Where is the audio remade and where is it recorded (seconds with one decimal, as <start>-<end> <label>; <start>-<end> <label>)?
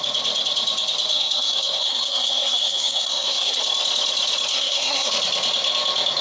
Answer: 0.0-1.1 recorded; 1.1-3.6 remade; 3.6-4.5 recorded; 4.5-5.1 remade; 5.1-6.2 recorded